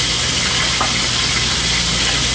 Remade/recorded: recorded